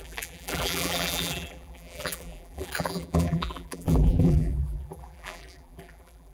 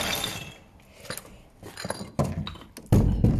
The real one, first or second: second